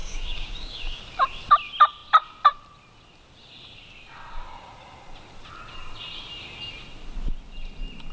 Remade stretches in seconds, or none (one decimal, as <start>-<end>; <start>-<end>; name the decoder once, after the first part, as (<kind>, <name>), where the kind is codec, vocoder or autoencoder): 0.0-1.0 (codec, DAC)